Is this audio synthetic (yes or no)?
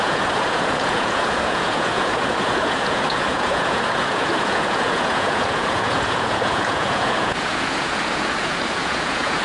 yes